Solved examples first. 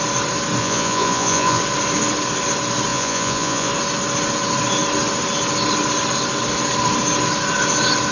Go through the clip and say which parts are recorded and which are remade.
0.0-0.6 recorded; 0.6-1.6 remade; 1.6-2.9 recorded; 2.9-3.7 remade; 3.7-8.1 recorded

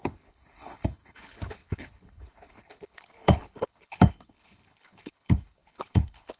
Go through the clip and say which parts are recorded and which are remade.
0.0-6.4 remade

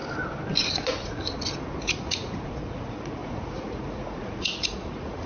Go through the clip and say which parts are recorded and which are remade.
0.0-0.7 recorded; 0.7-1.2 remade; 1.2-1.8 recorded; 1.8-5.3 remade